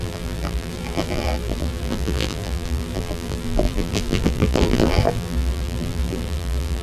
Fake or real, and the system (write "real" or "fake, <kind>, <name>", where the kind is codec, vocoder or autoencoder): fake, vocoder, BigVGAN v2